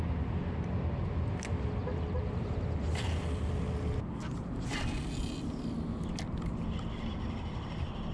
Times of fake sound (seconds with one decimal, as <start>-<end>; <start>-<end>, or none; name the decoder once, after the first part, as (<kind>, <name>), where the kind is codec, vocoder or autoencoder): 1.8-2.5 (vocoder, BigVGAN v2)